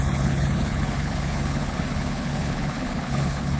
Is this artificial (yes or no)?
yes